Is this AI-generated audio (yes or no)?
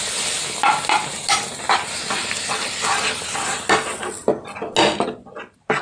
no